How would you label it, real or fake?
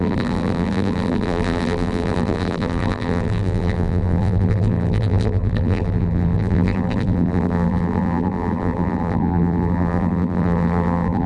fake